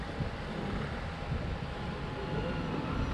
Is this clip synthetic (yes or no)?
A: no